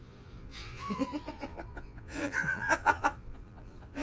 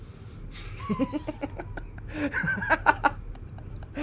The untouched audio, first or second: second